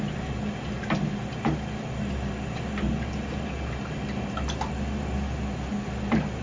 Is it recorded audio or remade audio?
recorded